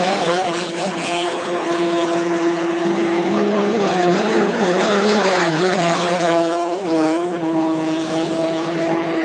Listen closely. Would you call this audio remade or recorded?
remade